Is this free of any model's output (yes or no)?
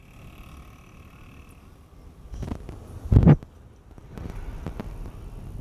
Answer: yes